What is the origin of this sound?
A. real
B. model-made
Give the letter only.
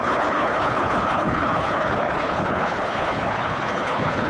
B